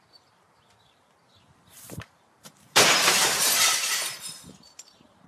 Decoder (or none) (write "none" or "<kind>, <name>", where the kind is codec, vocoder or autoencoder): vocoder, BigVGAN v2